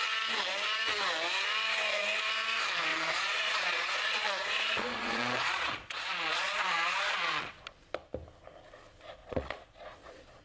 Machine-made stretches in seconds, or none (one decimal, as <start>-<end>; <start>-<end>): 2.9-7.5; 9.2-10.4

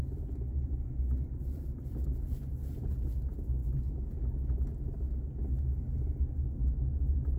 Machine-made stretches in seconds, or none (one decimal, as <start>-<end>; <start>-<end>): none

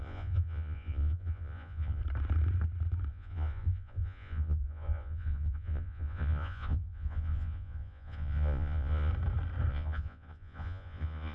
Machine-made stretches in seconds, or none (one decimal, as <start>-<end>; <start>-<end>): 0.0-2.0; 3.1-9.1; 9.7-11.3

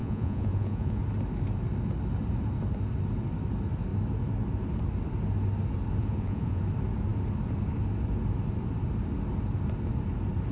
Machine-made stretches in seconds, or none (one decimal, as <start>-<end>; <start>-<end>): 0.0-1.0; 6.0-6.6

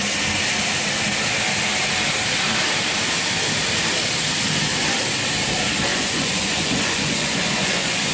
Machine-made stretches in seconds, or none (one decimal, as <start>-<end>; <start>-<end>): 5.9-8.1